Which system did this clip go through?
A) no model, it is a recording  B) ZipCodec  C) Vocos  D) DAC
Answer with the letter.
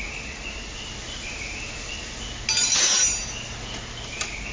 A